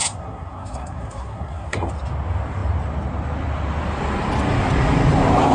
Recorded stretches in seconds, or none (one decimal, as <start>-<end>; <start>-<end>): 1.9-5.5